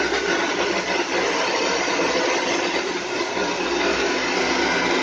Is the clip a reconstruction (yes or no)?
no